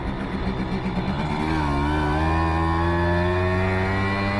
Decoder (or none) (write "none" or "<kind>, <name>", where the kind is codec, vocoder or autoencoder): none